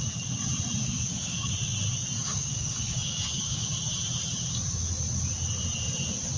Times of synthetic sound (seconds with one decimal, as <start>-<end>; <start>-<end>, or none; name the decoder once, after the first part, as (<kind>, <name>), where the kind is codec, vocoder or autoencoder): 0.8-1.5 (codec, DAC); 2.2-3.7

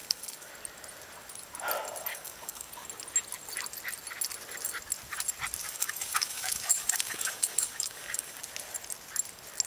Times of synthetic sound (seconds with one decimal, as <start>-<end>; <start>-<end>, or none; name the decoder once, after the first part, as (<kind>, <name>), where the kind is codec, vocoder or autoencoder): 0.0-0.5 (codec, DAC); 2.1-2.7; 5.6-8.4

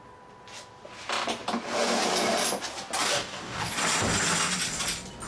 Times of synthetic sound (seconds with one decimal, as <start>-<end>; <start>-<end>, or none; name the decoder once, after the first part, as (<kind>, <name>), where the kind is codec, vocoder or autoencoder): 3.0-3.7 (codec, DAC)

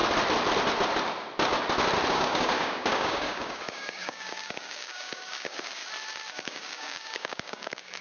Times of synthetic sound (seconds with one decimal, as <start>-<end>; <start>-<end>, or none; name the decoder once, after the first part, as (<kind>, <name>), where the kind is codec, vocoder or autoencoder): 2.1-5.8 (codec, DAC); 6.3-8.0

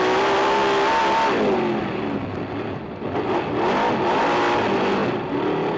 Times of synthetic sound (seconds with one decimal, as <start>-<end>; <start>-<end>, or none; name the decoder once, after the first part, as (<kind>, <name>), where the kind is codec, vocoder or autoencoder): none

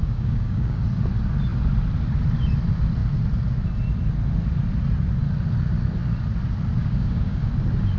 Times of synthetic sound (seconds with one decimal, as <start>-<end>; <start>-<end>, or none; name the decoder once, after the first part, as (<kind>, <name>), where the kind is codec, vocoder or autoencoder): 0.0-0.8 (codec, DAC); 6.8-7.5

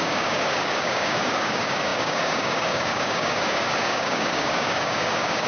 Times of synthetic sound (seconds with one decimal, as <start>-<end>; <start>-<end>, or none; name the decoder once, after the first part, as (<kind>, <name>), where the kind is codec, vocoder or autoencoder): 0.0-5.5 (codec, DAC)